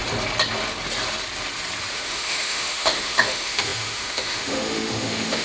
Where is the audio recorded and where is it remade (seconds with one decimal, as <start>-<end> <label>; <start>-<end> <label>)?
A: 0.0-1.9 recorded; 1.9-5.4 remade